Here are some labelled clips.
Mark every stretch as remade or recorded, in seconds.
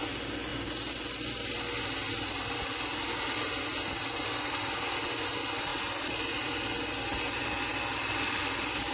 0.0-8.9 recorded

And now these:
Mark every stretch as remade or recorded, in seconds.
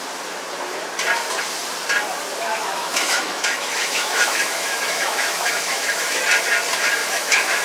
0.0-2.5 recorded; 2.5-6.2 remade; 6.2-7.0 recorded; 7.0-7.6 remade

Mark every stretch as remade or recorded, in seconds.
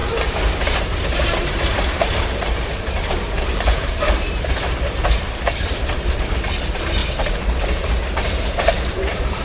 0.0-0.8 recorded; 0.8-7.0 remade; 7.0-8.9 recorded; 8.9-9.4 remade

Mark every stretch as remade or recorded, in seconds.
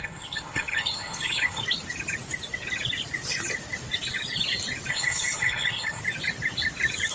0.0-1.6 remade; 1.6-4.9 recorded; 4.9-6.0 remade; 6.0-7.1 recorded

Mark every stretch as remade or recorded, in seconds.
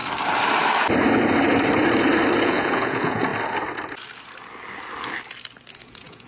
0.0-2.4 recorded; 2.4-3.3 remade; 3.3-5.7 recorded; 5.7-6.3 remade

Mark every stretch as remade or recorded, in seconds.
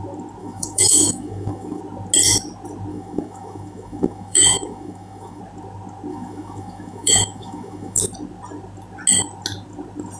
0.0-0.4 recorded; 0.4-1.8 remade; 1.8-2.9 recorded; 2.9-5.4 remade; 5.4-6.1 recorded; 6.1-8.0 remade; 8.0-10.2 recorded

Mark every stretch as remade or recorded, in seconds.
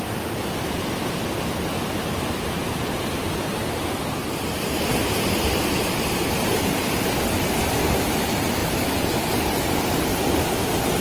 0.0-3.5 recorded; 3.5-7.1 remade; 7.1-8.6 recorded; 8.6-9.2 remade; 9.2-10.1 recorded; 10.1-10.6 remade; 10.6-11.0 recorded